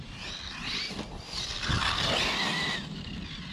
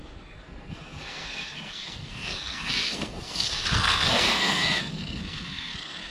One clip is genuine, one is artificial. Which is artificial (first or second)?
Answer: second